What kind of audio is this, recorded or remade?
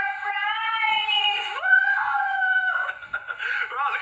remade